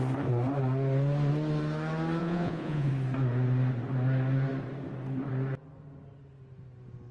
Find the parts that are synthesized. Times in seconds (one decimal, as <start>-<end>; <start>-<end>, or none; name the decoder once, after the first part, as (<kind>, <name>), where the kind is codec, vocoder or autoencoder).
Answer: 2.2-2.9 (vocoder, Vocos)